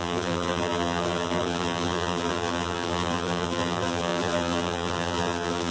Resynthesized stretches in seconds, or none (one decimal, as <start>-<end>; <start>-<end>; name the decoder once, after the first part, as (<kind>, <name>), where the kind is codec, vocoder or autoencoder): 0.0-5.7 (vocoder, BigVGAN v2)